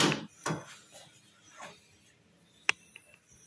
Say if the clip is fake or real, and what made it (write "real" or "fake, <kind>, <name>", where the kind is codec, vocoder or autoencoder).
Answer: real